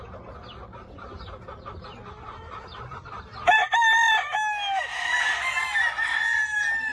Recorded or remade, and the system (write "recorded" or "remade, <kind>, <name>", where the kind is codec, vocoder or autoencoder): recorded